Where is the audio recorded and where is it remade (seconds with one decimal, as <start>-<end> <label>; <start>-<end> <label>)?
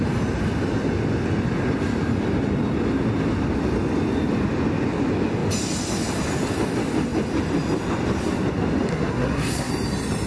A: 0.0-8.9 recorded; 8.9-9.7 remade; 9.7-10.3 recorded